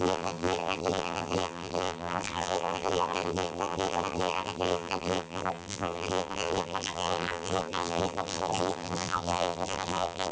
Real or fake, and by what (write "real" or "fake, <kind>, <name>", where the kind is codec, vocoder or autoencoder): fake, vocoder, BigVGAN v2